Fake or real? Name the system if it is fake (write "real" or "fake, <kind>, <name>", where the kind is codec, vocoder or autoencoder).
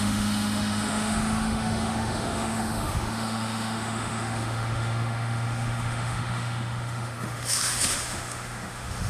fake, autoencoder, DAC-VAE